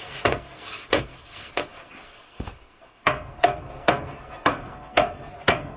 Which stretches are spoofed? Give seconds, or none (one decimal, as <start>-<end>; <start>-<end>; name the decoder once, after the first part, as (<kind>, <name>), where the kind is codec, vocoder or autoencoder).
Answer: 0.0-5.8 (codec, SNAC)

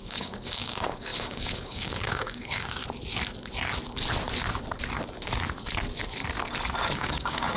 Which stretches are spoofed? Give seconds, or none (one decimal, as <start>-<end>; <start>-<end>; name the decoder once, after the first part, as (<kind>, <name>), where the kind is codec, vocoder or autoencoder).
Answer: 0.0-2.8 (codec, DAC); 6.9-7.6

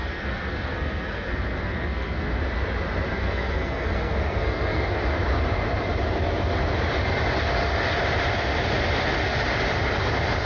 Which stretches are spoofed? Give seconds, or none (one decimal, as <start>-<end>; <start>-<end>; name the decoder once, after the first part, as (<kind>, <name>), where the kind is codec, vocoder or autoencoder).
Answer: 0.0-2.4 (codec, SNAC); 3.1-5.0

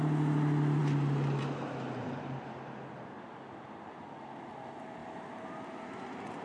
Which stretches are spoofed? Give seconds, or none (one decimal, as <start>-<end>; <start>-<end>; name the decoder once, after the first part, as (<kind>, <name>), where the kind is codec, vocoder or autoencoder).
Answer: none

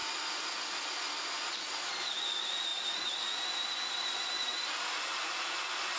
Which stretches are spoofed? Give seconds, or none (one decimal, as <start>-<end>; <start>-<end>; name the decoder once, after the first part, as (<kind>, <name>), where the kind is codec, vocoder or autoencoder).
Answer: none

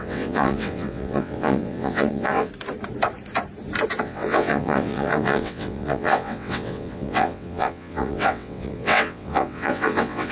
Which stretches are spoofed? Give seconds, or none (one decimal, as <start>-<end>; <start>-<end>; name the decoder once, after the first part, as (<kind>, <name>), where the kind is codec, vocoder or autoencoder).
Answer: 0.0-2.5 (vocoder, WaveNeXt); 4.0-10.3

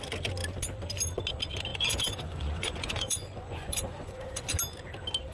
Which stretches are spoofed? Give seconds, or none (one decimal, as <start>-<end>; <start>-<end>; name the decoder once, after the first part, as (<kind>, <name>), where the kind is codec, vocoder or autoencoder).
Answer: 1.7-4.4 (vocoder, Vocos)

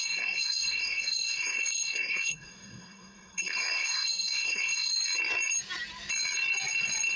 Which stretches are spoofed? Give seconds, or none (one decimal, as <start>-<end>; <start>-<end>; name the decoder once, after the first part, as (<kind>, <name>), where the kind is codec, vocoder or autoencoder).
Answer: 0.0-4.9 (codec, SNAC)